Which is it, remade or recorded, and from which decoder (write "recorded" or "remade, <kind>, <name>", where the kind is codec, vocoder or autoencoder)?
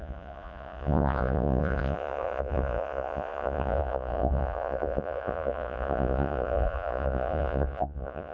remade, vocoder, Vocos